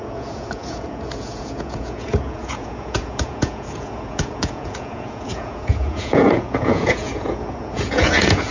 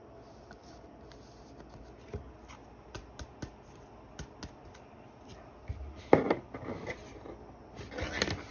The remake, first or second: first